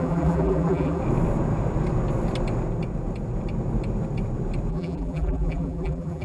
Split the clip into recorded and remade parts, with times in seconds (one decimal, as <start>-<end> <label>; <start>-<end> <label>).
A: 0.0-1.0 remade; 1.0-4.7 recorded; 4.7-6.2 remade